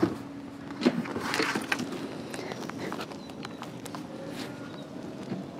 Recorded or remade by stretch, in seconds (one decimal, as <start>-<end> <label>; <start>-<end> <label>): 0.0-1.1 recorded; 1.1-1.7 remade; 1.7-5.6 recorded